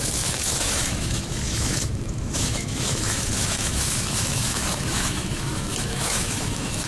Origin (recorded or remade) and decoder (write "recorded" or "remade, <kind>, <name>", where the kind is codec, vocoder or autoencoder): remade, autoencoder, DAC-VAE